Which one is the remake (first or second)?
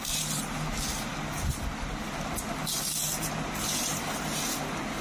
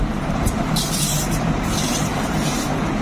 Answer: second